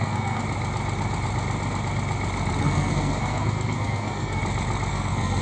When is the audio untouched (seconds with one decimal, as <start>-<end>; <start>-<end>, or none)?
0.4-2.6; 4.4-4.9